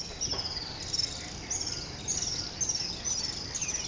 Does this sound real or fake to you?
real